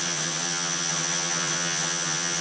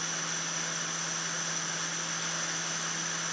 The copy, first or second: first